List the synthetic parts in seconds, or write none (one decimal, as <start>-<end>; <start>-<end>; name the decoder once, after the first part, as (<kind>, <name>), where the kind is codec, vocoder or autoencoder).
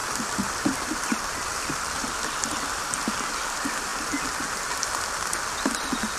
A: 0.0-2.1 (vocoder, BigVGAN v2)